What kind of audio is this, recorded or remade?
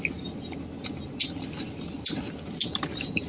recorded